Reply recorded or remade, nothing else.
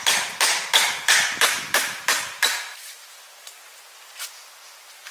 recorded